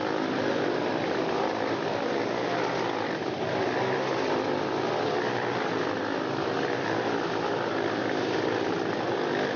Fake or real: fake